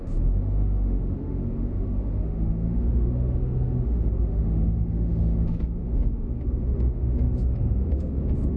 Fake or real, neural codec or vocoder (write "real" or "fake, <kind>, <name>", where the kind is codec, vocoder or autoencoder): fake, autoencoder, DAC-VAE